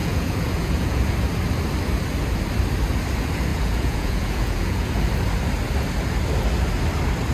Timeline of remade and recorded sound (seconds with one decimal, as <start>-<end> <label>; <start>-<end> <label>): 0.0-1.0 remade; 1.0-3.5 recorded; 3.5-5.0 remade; 5.0-7.3 recorded